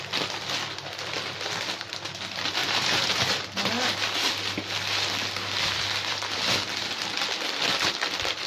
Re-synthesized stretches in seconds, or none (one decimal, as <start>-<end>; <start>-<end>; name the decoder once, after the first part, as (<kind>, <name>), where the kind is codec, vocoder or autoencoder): 2.6-3.7 (vocoder, BigVGAN v2)